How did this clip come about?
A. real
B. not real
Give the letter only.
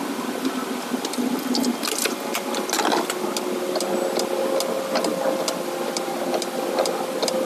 A